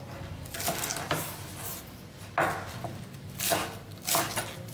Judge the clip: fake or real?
real